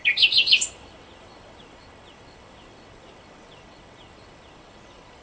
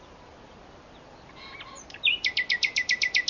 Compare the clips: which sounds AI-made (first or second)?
first